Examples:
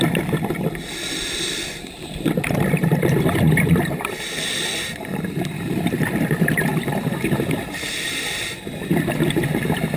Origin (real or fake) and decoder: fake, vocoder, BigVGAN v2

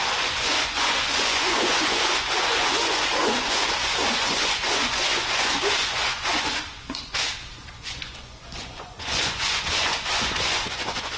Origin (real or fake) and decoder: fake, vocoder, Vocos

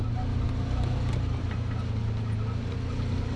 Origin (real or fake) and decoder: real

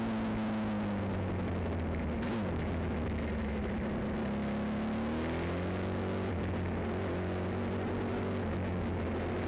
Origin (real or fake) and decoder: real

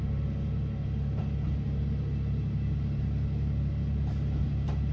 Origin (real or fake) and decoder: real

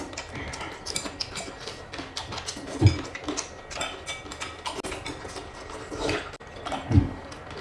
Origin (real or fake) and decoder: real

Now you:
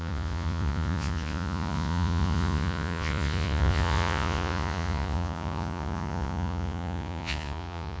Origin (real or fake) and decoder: fake, vocoder, Vocos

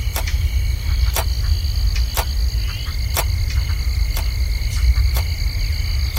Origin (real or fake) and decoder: real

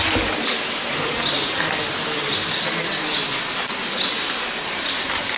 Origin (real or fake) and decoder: real